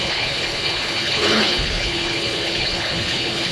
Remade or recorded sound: remade